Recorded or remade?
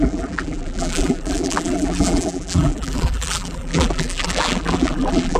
remade